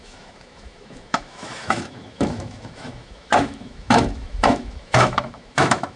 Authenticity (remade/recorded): remade